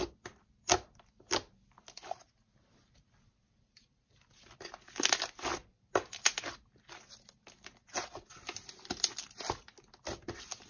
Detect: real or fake real